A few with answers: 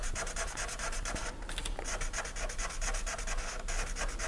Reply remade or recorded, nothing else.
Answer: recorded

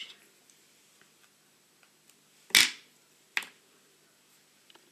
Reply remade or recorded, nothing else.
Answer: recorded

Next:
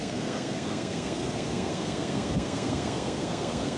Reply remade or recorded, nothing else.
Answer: remade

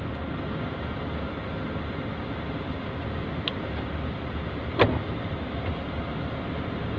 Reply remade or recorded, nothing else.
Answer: recorded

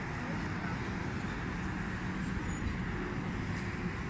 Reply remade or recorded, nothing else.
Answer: recorded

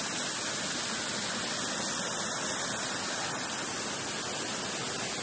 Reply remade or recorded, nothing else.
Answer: recorded